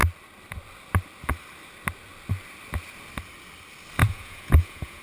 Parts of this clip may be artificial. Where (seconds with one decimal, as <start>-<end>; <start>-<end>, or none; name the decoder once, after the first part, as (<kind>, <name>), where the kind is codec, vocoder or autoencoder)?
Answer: 4.0-5.0 (vocoder, Vocos)